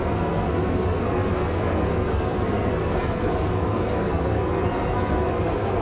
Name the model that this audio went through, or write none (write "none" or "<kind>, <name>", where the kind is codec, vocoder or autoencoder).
codec, SNAC